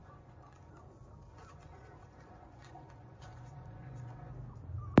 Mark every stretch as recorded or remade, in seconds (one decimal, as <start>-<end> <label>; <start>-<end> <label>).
0.0-0.7 remade; 0.7-1.3 recorded; 1.3-4.3 remade; 4.3-5.0 recorded